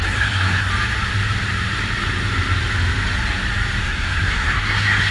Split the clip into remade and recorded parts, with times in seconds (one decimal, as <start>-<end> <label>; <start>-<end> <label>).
0.0-0.7 remade; 0.7-3.8 recorded; 3.8-5.1 remade